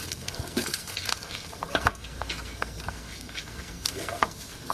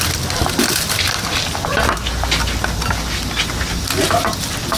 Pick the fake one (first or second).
first